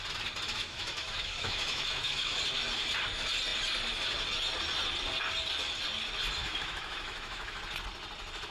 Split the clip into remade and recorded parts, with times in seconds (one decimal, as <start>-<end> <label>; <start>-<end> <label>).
0.0-0.5 recorded; 0.5-2.4 remade; 2.4-6.4 recorded; 6.4-7.6 remade; 7.6-8.5 recorded